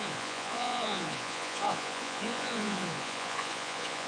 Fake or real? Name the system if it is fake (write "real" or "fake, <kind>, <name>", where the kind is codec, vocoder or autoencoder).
fake, vocoder, Vocos